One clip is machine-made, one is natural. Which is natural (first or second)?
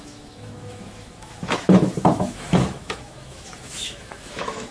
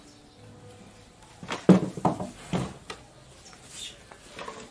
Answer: second